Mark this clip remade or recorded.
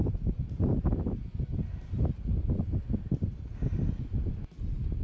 recorded